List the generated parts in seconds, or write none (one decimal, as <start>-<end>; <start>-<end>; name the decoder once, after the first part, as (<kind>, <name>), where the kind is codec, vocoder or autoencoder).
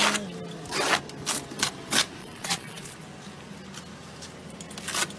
2.2-2.9 (vocoder, Vocos)